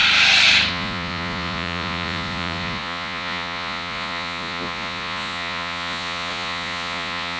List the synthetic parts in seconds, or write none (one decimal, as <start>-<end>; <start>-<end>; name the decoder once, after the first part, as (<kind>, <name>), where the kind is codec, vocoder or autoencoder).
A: 0.7-7.4 (vocoder, Vocos)

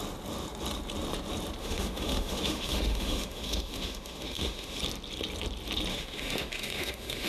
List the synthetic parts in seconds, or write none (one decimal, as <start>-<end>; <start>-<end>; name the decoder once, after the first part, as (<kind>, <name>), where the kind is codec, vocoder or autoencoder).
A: 1.6-4.8 (autoencoder, DAC-VAE); 5.9-7.3

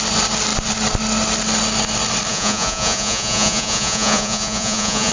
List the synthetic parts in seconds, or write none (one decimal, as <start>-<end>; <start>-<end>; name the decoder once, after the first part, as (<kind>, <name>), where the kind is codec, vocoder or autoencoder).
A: 2.3-5.1 (vocoder, Vocos)

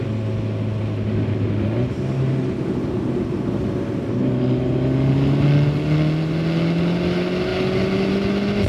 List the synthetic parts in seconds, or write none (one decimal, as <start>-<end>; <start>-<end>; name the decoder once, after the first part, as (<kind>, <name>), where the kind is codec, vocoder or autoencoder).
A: none

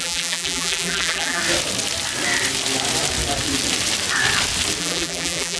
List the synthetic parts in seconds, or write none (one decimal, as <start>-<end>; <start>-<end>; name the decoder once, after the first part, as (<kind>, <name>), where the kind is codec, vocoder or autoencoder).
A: 0.0-1.4 (vocoder, BigVGAN v2); 4.8-5.6

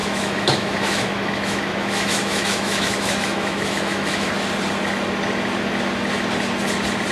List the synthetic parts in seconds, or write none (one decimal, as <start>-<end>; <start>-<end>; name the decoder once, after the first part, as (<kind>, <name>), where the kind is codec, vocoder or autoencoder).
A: 0.0-4.3 (autoencoder, DAC-VAE)

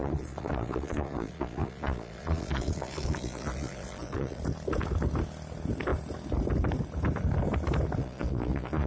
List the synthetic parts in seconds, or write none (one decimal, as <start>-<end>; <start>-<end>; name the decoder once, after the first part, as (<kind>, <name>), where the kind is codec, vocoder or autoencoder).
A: 0.0-4.4 (vocoder, Vocos); 8.0-8.9

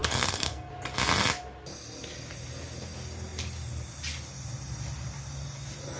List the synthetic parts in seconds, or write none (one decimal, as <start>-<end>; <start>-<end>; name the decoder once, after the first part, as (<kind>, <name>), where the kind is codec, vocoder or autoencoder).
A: 0.0-0.7 (codec, SNAC)